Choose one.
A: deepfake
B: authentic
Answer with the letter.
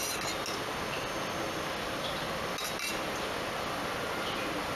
B